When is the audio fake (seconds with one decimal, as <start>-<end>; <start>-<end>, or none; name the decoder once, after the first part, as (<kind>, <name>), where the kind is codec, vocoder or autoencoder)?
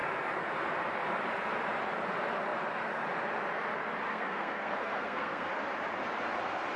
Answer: 4.1-5.5 (codec, SNAC)